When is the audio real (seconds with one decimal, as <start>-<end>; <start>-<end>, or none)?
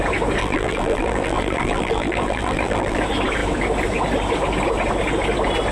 0.0-0.4; 3.0-5.7